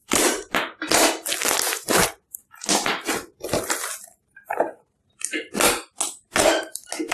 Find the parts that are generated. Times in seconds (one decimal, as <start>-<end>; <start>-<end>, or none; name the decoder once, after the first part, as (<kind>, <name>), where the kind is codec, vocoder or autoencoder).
none